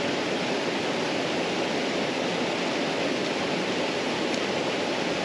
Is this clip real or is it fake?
real